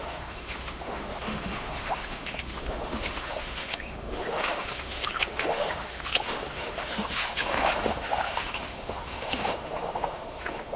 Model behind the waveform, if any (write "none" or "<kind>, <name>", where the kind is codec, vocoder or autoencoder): autoencoder, DAC-VAE